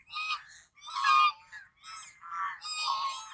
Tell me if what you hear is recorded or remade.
recorded